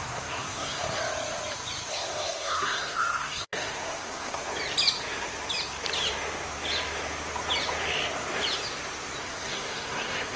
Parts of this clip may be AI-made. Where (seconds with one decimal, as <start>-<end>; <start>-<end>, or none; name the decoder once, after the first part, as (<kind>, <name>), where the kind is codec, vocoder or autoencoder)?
0.0-1.0 (codec, SNAC); 1.9-4.5; 9.2-10.4